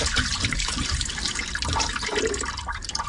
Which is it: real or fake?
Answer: fake